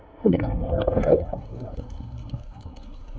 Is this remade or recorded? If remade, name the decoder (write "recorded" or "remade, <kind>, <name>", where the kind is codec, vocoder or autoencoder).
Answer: remade, codec, SNAC